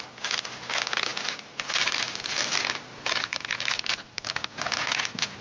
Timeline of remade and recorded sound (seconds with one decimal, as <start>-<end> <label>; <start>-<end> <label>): 0.0-1.1 recorded; 1.1-4.3 remade; 4.3-5.4 recorded